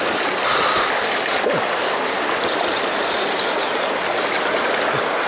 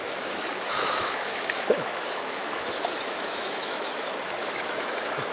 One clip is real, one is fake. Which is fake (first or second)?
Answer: second